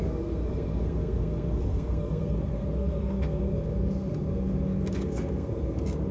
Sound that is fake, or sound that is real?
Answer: fake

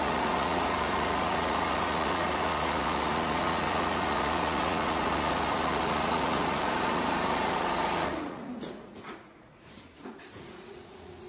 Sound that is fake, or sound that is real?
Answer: fake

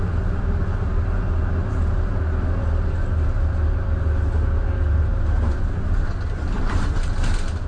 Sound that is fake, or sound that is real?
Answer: real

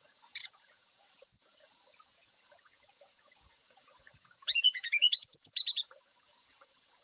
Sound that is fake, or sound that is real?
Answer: fake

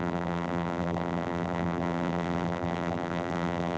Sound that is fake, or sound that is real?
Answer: fake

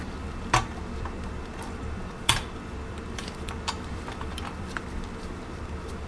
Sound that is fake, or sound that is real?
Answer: fake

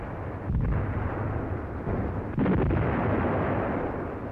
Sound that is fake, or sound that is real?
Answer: real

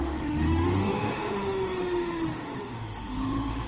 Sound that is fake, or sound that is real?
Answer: fake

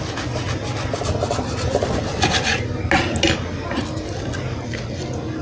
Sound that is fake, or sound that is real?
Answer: real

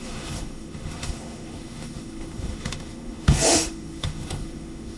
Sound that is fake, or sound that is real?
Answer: fake